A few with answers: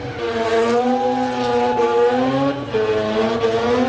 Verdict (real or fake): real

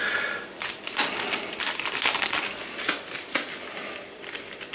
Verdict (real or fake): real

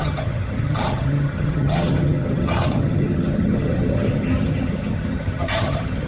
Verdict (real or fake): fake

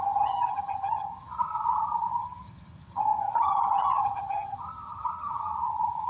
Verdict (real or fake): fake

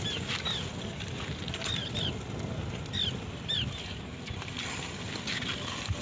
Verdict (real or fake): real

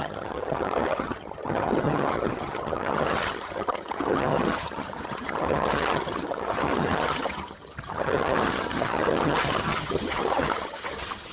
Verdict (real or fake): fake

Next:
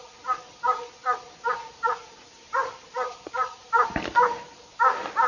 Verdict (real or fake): real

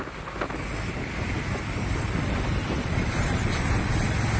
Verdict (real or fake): real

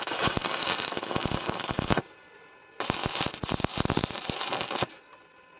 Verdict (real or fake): real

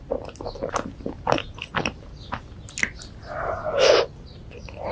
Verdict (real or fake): real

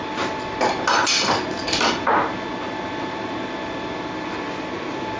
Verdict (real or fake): real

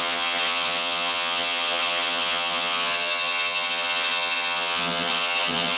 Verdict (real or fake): fake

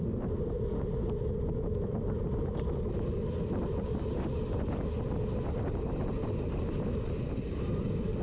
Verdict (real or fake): real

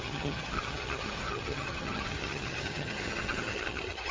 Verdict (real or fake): fake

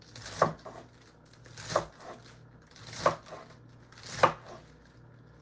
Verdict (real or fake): real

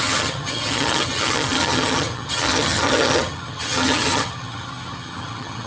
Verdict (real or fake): fake